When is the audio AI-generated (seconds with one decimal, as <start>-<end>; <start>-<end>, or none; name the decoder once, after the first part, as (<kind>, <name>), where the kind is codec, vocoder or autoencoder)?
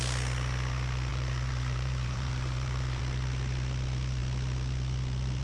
1.1-3.0 (vocoder, BigVGAN v2)